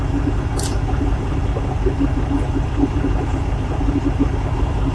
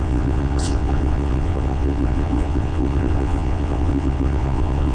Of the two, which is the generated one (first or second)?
second